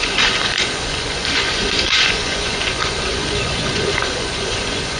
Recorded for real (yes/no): no